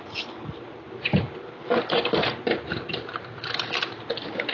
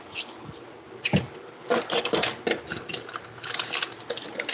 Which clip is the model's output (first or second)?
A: first